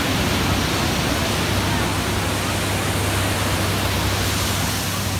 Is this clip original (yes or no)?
yes